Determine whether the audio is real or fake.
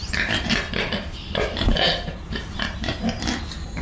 real